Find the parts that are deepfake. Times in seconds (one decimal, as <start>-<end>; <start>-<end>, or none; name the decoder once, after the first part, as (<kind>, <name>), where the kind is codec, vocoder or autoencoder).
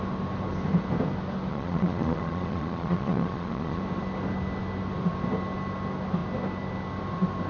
1.5-3.8 (vocoder, Vocos)